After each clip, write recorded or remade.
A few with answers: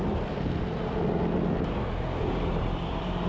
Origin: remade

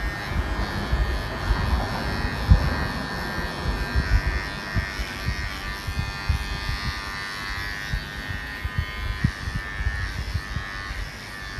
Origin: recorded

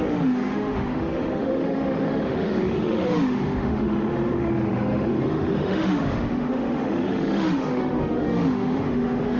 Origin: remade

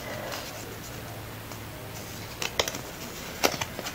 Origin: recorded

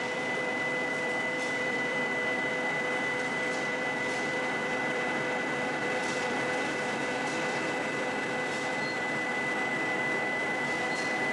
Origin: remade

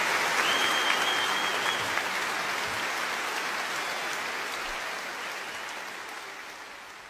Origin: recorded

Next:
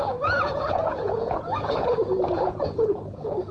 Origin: remade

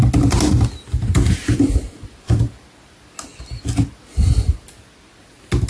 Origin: recorded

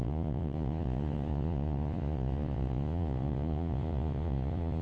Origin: remade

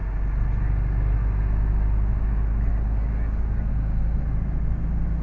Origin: recorded